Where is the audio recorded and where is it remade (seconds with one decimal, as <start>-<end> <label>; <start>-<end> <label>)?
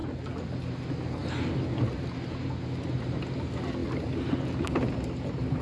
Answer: 0.0-5.6 recorded